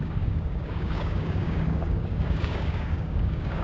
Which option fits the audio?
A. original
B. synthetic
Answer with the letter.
B